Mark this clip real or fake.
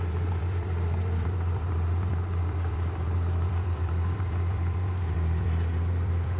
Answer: fake